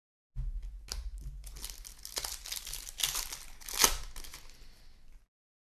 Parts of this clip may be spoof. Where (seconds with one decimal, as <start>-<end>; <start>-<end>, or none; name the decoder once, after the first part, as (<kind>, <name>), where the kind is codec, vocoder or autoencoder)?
none